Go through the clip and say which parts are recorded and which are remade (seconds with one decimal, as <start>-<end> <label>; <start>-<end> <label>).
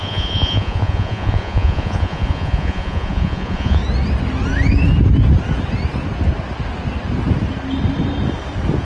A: 0.0-3.8 remade; 3.8-8.8 recorded